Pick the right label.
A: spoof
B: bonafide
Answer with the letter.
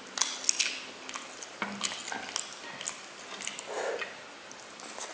B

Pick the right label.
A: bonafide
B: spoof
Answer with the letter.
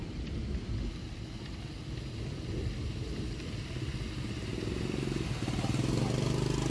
A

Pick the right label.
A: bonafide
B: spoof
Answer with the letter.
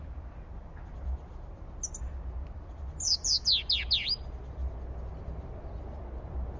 A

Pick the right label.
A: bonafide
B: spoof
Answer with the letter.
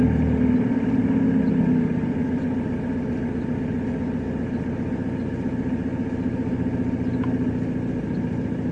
A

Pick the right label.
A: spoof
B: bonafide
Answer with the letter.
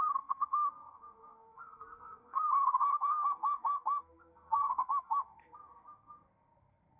A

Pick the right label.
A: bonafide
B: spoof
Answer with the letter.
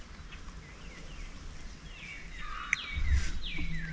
A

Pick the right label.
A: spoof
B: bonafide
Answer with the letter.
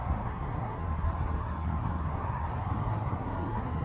A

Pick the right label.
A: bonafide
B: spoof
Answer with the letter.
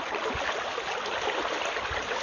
A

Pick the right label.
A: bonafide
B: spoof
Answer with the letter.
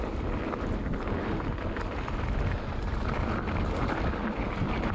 A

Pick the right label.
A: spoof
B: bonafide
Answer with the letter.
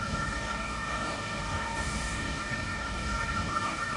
A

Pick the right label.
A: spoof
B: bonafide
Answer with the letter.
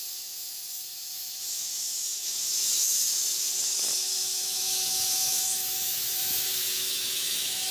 A